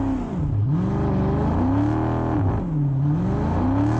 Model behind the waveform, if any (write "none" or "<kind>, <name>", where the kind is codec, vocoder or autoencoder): none